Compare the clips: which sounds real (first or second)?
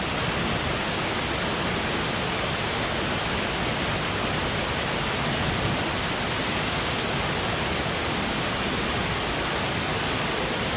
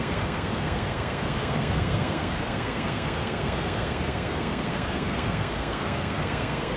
first